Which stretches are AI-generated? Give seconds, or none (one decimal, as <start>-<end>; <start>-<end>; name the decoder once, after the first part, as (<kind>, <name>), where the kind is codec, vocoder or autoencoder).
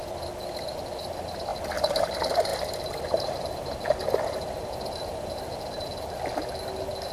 none